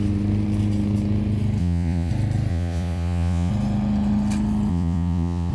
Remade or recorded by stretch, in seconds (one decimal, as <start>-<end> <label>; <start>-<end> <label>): 0.0-1.6 recorded; 1.6-2.1 remade; 2.1-2.5 recorded; 2.5-3.5 remade; 3.5-4.7 recorded; 4.7-5.5 remade